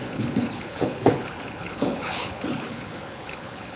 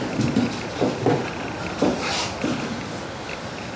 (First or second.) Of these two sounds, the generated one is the first